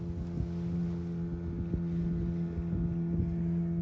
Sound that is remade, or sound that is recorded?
recorded